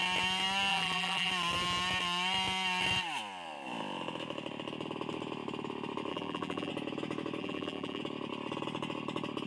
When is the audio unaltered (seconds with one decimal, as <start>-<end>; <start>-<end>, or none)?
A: 0.0-0.7; 1.3-6.1; 6.7-7.4; 8.0-9.5